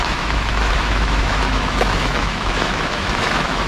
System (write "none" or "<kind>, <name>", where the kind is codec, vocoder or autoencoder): autoencoder, DAC-VAE